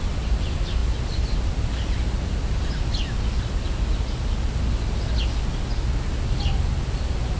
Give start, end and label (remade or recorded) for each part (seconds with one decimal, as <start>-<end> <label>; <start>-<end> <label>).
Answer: 0.0-7.4 recorded